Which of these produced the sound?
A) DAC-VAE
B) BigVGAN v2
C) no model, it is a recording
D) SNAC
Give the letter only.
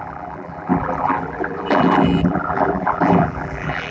B